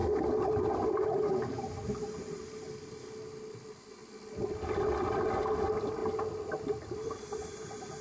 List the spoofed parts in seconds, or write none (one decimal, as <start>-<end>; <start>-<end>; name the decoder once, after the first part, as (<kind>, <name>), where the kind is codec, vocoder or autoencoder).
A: none